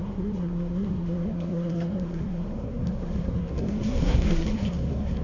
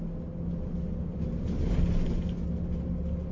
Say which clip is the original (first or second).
second